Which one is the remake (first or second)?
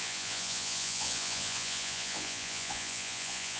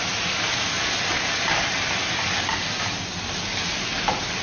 first